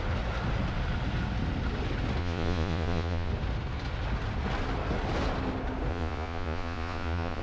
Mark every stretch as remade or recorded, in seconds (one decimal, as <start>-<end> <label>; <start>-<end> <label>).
0.0-2.2 recorded; 2.2-3.3 remade; 3.3-5.9 recorded; 5.9-7.4 remade